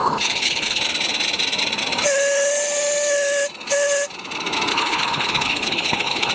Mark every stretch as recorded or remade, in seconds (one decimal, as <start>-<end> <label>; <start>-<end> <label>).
0.0-0.8 remade; 0.8-4.7 recorded; 4.7-6.3 remade